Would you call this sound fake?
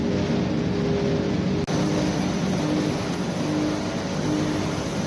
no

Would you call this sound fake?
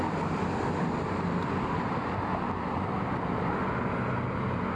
no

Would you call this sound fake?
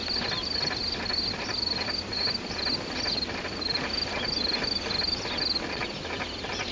no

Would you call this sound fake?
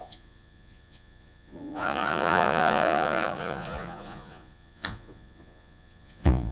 yes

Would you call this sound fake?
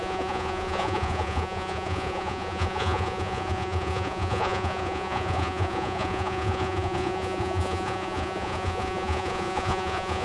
yes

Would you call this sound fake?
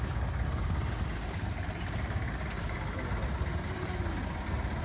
no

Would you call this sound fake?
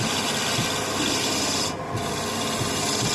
no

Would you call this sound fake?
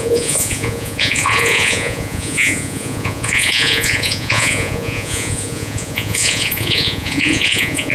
yes